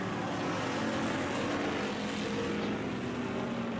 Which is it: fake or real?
real